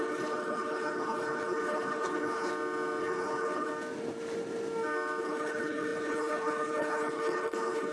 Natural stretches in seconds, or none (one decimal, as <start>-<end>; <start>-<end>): 2.5-3.0; 3.7-5.2